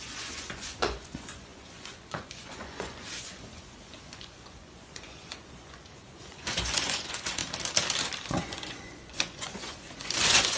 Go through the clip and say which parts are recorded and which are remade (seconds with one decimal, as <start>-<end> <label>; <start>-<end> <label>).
0.0-7.4 remade; 7.4-8.3 recorded; 8.3-10.6 remade